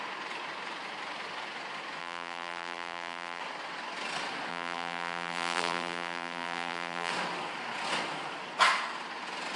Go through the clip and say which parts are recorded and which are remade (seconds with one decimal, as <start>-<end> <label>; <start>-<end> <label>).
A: 0.0-2.0 recorded; 2.0-3.4 remade; 3.4-4.5 recorded; 4.5-7.1 remade; 7.1-9.6 recorded